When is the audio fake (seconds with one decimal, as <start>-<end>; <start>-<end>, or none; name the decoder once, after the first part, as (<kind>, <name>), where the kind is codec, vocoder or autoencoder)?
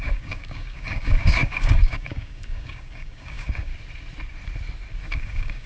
0.0-3.7 (codec, DAC); 5.0-5.7